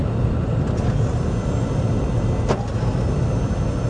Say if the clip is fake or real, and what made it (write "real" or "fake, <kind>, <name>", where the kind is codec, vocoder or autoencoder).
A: real